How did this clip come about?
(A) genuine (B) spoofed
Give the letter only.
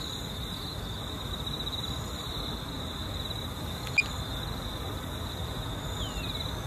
A